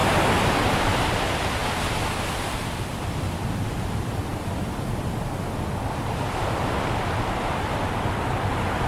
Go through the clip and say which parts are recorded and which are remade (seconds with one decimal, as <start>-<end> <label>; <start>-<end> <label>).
0.0-4.3 remade; 4.3-7.2 recorded; 7.2-8.9 remade